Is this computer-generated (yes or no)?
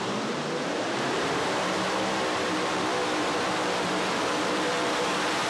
yes